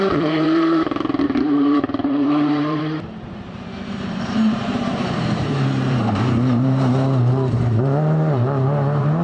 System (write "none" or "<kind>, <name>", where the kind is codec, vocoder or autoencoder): vocoder, BigVGAN v2